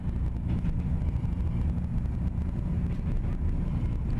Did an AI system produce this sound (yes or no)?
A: no